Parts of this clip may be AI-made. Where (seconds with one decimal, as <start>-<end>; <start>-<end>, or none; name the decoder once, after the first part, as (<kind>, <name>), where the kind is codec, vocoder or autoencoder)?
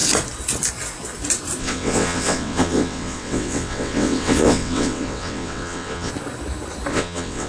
1.6-6.1 (vocoder, WaveNeXt); 6.9-7.5